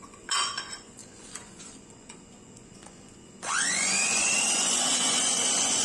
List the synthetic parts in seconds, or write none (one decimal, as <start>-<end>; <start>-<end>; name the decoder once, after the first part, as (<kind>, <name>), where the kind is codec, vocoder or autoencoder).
0.0-5.8 (vocoder, Vocos)